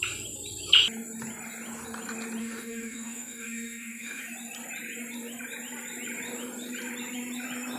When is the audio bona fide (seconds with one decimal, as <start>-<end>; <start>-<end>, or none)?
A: 0.0-2.4; 4.2-7.8